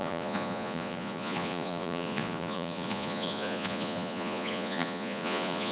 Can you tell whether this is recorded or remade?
remade